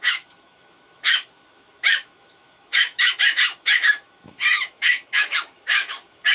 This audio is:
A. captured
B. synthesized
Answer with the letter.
B